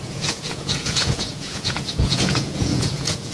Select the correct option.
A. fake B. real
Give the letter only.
A